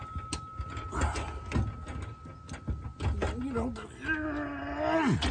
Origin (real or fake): real